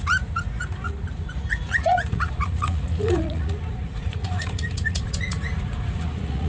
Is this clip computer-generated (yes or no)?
yes